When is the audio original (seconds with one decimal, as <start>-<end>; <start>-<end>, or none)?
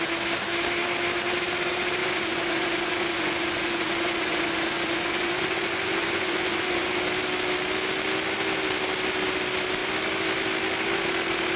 0.0-2.0; 7.0-11.6